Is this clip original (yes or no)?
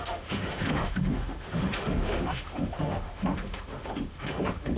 no